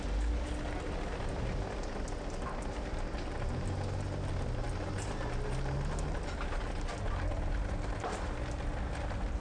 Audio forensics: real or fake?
real